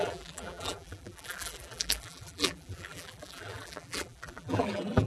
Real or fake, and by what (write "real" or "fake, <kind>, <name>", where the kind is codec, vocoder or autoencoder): fake, vocoder, BigVGAN v2